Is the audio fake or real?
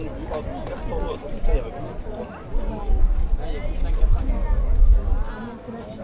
real